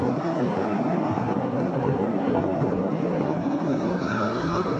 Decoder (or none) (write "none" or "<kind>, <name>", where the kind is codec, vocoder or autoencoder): codec, SNAC